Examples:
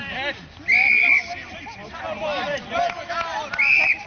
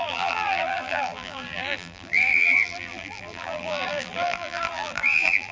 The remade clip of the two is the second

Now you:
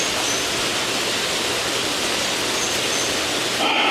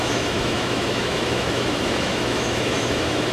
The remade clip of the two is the second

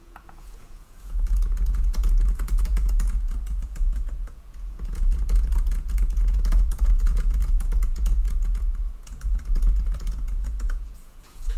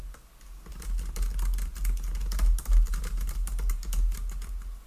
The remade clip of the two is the first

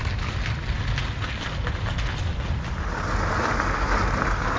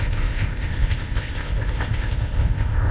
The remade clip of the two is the second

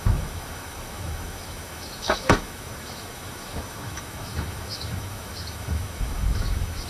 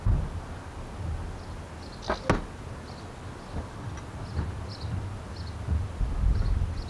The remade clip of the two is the first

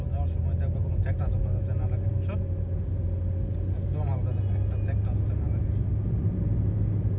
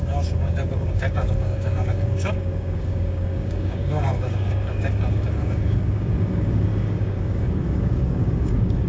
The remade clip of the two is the second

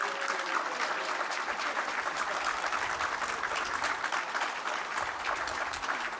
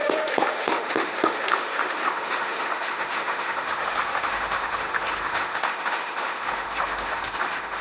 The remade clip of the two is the second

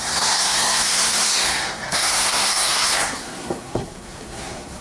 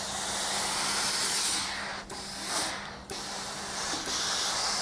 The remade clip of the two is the first